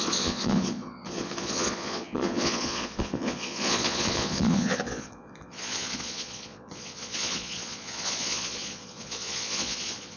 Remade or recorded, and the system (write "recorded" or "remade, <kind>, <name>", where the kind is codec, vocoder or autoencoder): remade, vocoder, Vocos